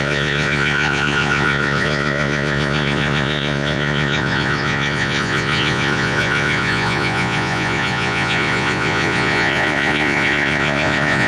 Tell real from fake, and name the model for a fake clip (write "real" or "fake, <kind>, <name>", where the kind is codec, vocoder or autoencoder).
fake, vocoder, Vocos